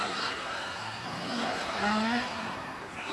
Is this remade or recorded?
remade